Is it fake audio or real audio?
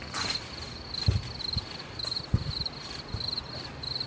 real